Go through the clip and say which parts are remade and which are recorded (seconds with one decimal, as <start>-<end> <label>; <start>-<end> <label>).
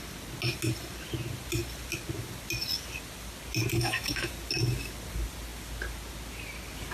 0.0-3.7 recorded; 3.7-4.3 remade; 4.3-6.9 recorded